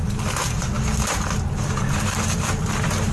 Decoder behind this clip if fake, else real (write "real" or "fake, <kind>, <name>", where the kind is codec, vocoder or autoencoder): real